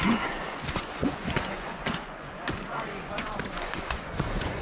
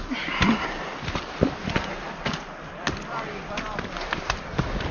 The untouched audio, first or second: second